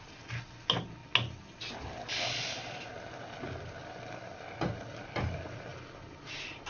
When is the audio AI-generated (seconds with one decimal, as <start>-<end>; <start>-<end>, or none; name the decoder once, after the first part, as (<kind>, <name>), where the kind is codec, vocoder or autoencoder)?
none